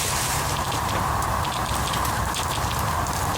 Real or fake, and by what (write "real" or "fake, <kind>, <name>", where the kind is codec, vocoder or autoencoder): fake, vocoder, BigVGAN v2